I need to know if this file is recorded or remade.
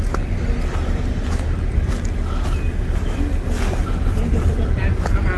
recorded